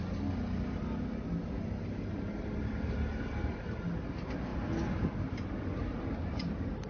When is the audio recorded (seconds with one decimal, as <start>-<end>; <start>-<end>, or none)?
0.0-6.9

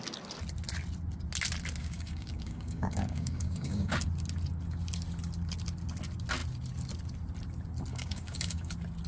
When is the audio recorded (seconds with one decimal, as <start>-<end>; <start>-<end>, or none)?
0.0-1.8; 3.9-7.9; 8.7-9.1

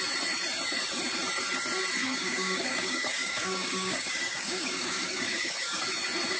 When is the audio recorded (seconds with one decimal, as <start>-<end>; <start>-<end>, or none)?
0.0-2.0; 5.8-6.4

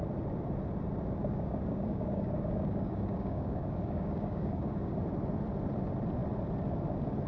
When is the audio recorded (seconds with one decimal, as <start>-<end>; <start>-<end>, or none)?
0.0-1.2; 4.9-7.3

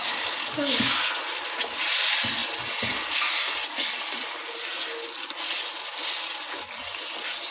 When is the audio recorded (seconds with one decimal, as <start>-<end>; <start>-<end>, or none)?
1.1-7.5

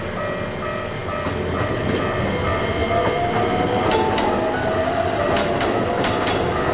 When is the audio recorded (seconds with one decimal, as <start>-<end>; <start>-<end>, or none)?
0.0-6.7